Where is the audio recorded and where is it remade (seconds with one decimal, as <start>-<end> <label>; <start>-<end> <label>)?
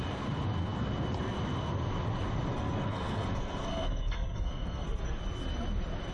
0.0-2.5 recorded; 2.5-5.2 remade; 5.2-6.1 recorded